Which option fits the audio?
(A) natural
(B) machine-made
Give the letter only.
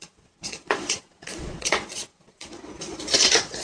B